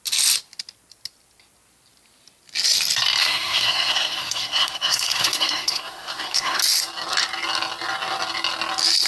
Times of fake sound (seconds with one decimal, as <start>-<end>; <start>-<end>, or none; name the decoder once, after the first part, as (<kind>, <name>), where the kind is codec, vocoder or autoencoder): 3.2-6.6 (codec, SNAC)